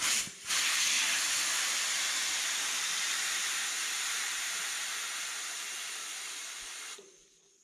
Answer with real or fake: fake